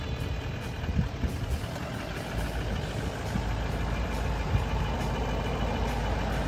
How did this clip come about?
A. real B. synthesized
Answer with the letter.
A